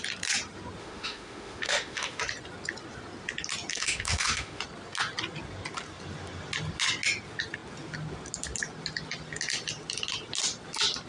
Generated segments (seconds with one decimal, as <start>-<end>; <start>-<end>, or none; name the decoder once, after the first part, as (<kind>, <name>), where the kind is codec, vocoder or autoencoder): 0.8-2.2 (autoencoder, DAC-VAE); 3.7-4.6